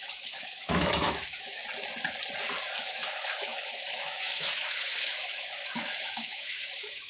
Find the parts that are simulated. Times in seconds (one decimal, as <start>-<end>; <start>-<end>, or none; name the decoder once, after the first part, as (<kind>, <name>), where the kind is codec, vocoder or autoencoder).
0.0-1.6 (autoencoder, DAC-VAE); 2.8-7.1